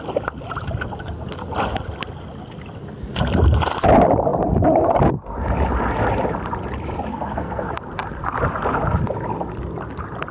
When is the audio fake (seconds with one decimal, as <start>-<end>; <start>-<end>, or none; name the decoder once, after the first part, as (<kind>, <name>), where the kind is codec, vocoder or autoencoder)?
7.1-7.7 (codec, SNAC)